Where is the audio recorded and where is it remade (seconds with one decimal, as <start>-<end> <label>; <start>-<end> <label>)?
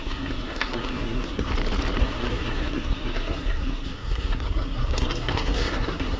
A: 0.0-1.5 remade; 1.5-2.0 recorded; 2.0-6.2 remade